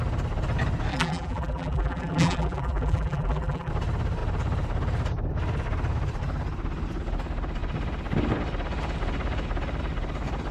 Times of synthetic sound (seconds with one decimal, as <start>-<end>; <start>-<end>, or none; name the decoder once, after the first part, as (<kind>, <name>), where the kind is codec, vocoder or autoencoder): 0.9-3.7 (vocoder, BigVGAN v2)